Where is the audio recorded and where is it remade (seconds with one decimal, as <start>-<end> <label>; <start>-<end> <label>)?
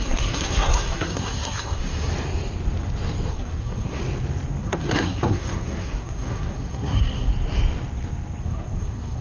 0.0-2.1 remade; 2.1-3.3 recorded; 3.3-4.0 remade; 4.0-4.6 recorded; 4.6-7.3 remade; 7.3-8.4 recorded; 8.4-9.2 remade